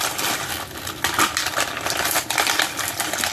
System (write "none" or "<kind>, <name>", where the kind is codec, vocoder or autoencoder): vocoder, BigVGAN v2